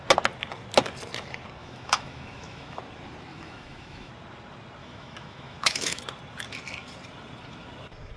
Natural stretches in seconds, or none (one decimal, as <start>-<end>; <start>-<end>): 0.0-1.6; 2.8-3.3; 4.1-4.8; 6.0-8.2